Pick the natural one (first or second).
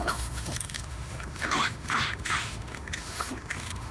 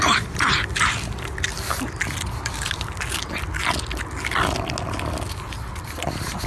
second